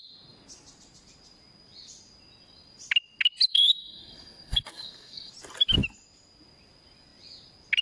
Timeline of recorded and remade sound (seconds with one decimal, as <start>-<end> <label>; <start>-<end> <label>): 0.0-3.5 recorded; 3.5-5.3 remade; 5.3-7.8 recorded